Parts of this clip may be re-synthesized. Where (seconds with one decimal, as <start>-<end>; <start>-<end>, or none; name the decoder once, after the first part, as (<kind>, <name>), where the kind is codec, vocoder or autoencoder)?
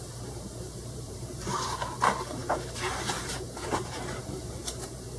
0.0-5.2 (vocoder, BigVGAN v2)